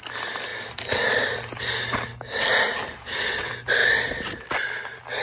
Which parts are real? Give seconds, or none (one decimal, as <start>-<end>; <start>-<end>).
0.0-3.8; 4.5-5.2